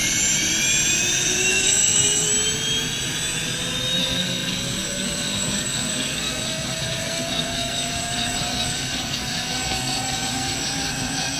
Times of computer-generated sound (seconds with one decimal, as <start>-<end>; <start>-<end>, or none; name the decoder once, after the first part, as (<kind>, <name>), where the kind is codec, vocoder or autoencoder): 1.5-2.3 (codec, SNAC); 4.0-11.4